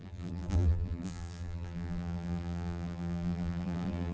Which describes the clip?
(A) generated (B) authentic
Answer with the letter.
A